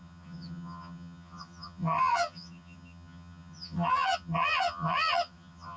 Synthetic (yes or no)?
yes